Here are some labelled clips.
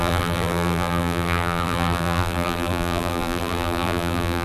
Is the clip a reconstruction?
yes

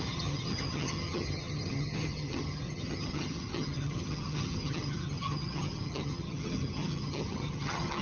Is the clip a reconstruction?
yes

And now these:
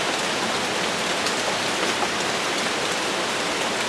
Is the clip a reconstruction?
no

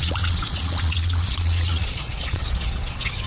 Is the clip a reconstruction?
yes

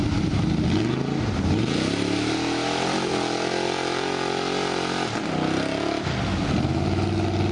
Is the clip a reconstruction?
no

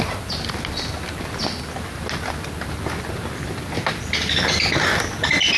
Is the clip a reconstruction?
no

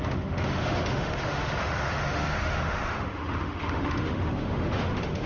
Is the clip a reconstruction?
yes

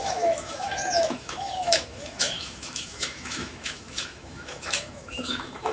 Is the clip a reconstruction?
yes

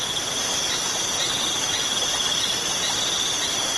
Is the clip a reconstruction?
no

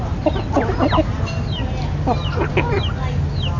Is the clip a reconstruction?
no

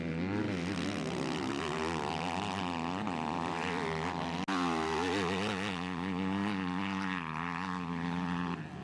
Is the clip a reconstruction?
no